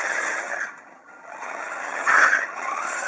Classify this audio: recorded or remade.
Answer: remade